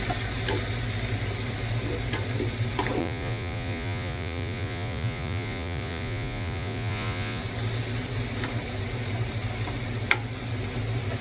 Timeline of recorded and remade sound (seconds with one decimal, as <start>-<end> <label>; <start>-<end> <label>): 0.0-3.0 recorded; 3.0-7.4 remade; 7.4-11.2 recorded